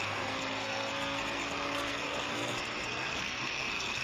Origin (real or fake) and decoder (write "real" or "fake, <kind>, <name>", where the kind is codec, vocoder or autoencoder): fake, codec, SNAC